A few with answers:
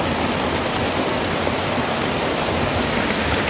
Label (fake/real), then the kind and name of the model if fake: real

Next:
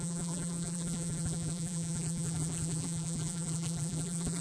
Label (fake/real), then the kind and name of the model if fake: fake, vocoder, BigVGAN v2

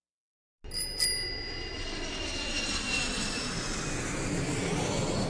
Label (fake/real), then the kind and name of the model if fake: real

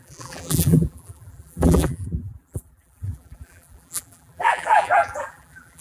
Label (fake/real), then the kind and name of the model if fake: fake, vocoder, BigVGAN v2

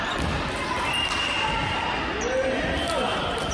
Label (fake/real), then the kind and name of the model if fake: real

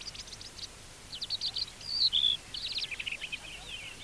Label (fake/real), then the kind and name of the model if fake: real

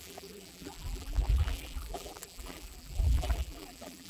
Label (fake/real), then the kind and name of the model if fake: fake, vocoder, BigVGAN v2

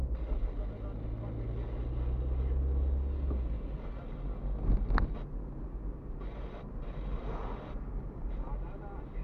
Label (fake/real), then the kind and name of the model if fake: real